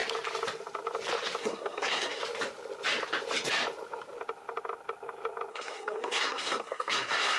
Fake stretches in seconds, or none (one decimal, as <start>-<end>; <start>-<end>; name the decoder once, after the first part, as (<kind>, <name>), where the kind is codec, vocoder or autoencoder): 1.4-2.2 (codec, SNAC); 5.5-7.4